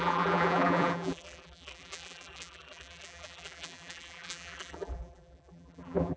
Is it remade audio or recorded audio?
remade